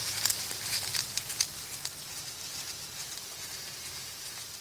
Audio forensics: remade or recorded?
recorded